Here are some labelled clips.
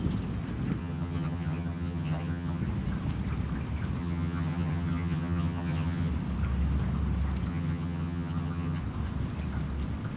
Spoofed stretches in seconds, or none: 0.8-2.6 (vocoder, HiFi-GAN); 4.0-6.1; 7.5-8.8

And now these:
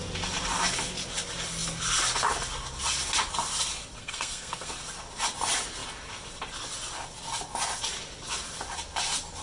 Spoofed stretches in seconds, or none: 4.0-4.7 (codec, SNAC)

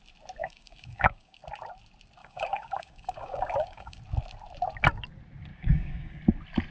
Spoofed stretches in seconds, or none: 0.4-1.4 (codec, DAC); 2.2-4.0; 5.5-6.2

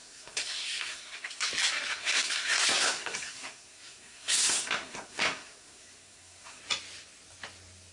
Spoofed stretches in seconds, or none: 0.0-1.5 (codec, SNAC); 1.9-6.6